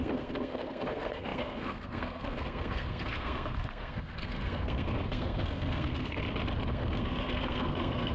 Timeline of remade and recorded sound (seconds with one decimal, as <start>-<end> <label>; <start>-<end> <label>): 0.0-6.2 remade; 6.2-6.7 recorded; 6.7-8.1 remade